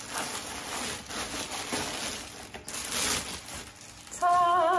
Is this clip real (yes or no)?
yes